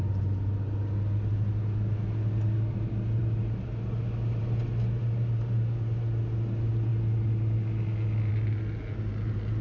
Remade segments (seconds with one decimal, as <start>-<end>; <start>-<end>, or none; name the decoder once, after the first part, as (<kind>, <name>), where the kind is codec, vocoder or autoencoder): none